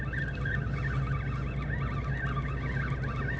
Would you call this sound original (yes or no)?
yes